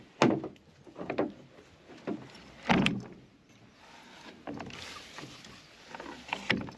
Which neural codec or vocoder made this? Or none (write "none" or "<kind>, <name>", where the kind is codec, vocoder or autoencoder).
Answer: none